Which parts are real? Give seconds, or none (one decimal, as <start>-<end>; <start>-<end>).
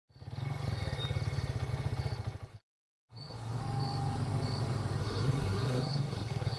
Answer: 0.0-2.5; 3.6-5.0